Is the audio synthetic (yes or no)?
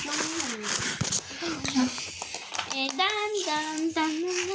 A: no